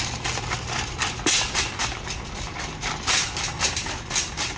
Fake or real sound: real